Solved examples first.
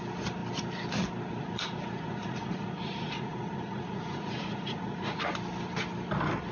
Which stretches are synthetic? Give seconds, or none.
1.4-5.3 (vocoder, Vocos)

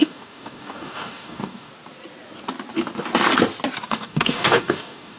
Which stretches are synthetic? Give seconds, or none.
0.0-1.7 (codec, DAC); 3.9-5.2

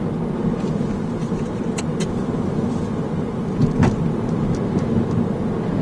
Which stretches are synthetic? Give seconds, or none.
3.8-4.5 (vocoder, BigVGAN v2)

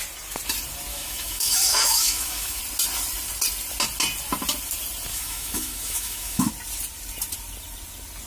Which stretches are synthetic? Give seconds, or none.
0.9-2.6 (autoencoder, DAC-VAE); 5.1-6.5